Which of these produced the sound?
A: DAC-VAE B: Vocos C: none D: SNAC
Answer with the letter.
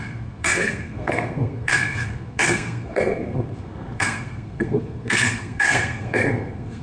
D